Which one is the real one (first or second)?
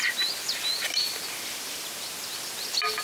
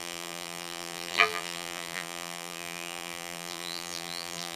first